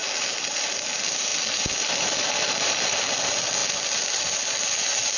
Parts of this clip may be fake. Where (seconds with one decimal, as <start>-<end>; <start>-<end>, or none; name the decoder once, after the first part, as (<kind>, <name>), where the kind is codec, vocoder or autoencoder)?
none